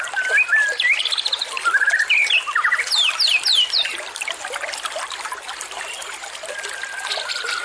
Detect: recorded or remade recorded